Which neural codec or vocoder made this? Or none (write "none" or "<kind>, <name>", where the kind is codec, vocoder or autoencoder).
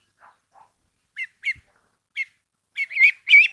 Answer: none